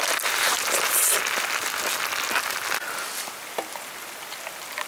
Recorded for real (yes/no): yes